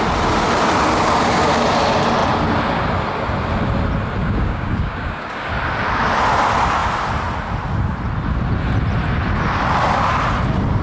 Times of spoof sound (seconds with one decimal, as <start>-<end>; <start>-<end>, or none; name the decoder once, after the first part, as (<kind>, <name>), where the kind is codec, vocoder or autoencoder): 4.2-5.5 (codec, DAC)